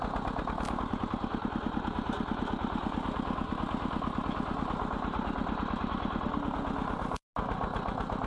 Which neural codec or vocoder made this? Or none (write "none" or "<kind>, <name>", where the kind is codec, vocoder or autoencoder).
none